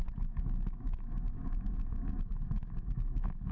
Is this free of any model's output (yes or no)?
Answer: no